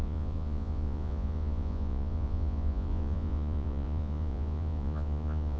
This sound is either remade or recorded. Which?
remade